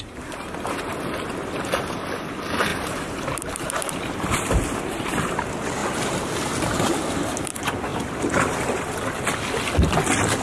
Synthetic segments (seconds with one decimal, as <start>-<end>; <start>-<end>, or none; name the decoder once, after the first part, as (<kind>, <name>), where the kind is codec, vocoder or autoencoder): 2.7-5.3 (vocoder, BigVGAN v2)